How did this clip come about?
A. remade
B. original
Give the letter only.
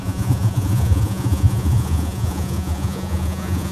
A